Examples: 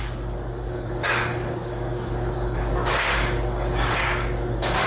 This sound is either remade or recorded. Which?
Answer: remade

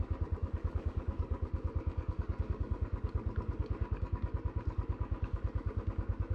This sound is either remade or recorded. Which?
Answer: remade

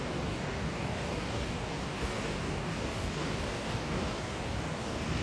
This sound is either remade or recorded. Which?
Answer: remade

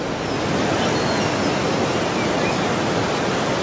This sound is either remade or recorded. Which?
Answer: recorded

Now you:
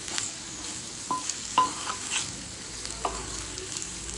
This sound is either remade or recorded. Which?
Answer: remade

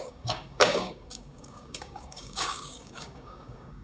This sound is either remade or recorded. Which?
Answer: remade